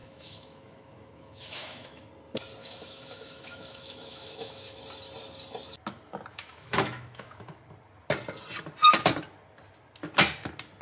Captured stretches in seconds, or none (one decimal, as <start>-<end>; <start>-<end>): 2.1-2.6; 4.8-6.3; 7.6-10.8